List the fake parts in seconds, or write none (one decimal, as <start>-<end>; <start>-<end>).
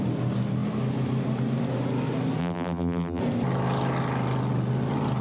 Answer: 2.4-3.2